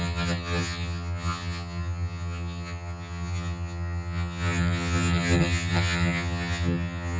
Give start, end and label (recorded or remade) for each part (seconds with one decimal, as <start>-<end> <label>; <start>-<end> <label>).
0.0-7.2 remade